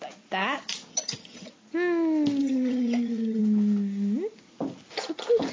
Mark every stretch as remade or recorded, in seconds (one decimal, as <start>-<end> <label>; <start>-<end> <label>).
0.0-0.9 recorded; 0.9-1.5 remade; 1.5-2.4 recorded; 2.4-3.4 remade; 3.4-5.5 recorded

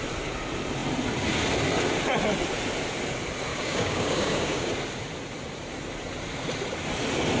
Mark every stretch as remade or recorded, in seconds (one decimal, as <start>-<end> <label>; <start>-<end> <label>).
0.0-3.5 recorded; 3.5-4.7 remade; 4.7-7.4 recorded

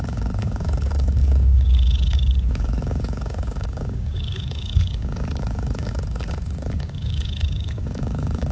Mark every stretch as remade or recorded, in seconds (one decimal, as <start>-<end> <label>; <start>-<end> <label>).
0.0-8.5 remade

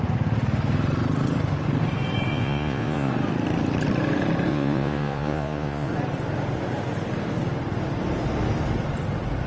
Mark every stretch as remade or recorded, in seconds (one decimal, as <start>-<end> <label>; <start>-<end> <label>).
0.0-2.3 recorded; 2.3-3.1 remade; 3.1-4.5 recorded; 4.5-5.9 remade; 5.9-9.5 recorded

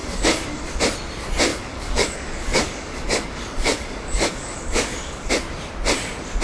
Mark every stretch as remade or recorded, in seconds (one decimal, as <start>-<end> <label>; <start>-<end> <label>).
0.0-0.8 remade; 0.8-1.5 recorded; 1.5-5.3 remade; 5.3-6.4 recorded

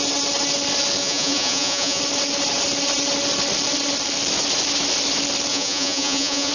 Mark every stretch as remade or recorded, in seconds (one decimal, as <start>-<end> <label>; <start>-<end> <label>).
0.0-1.0 recorded; 1.0-2.0 remade; 2.0-5.5 recorded; 5.5-6.5 remade

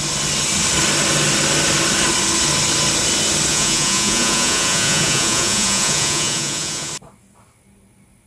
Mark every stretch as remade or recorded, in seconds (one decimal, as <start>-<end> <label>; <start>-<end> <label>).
0.0-3.5 recorded; 3.5-6.9 remade; 6.9-8.3 recorded

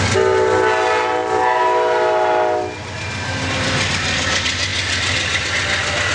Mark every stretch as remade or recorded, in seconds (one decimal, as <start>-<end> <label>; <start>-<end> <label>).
0.0-6.1 recorded